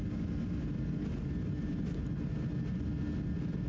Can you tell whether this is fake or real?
real